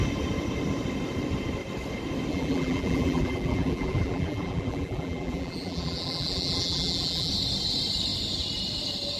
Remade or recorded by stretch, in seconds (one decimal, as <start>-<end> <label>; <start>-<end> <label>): 0.0-2.3 recorded; 2.3-7.3 remade; 7.3-9.2 recorded